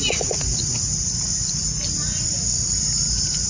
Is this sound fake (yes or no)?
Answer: no